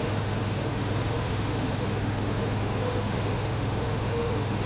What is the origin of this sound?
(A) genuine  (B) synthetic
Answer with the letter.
B